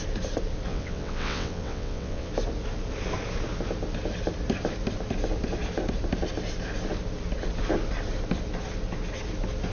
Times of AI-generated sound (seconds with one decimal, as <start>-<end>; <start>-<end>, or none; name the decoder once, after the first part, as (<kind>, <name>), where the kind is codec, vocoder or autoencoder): 0.7-2.3 (vocoder, WaveNeXt)